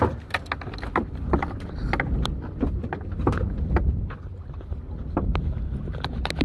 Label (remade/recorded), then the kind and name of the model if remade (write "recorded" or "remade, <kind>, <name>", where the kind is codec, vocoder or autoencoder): recorded